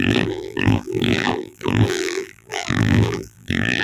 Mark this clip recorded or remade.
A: remade